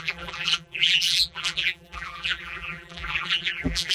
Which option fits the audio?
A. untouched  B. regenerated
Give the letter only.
B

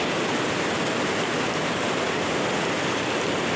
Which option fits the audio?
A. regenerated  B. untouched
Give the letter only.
B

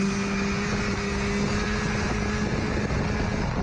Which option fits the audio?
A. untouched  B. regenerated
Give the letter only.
A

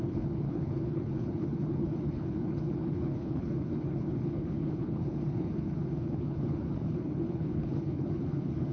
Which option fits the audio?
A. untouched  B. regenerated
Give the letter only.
B